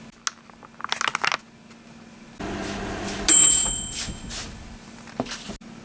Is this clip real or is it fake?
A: real